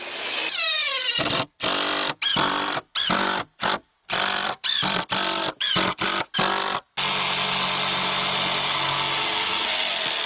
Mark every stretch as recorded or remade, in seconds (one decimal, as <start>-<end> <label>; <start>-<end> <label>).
0.0-0.8 recorded; 0.8-1.9 remade; 1.9-2.3 recorded; 2.3-5.1 remade; 5.1-10.3 recorded

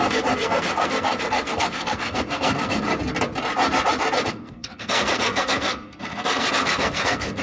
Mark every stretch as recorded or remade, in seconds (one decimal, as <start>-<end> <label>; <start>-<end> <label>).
0.0-2.9 remade; 2.9-4.3 recorded; 4.3-7.4 remade

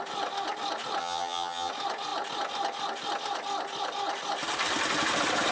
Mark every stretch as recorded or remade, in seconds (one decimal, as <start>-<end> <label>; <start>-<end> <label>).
0.0-1.0 recorded; 1.0-1.7 remade; 1.7-5.5 recorded

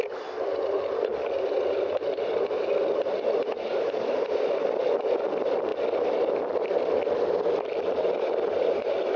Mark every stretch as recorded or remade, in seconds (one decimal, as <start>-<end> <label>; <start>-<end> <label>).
0.0-9.2 recorded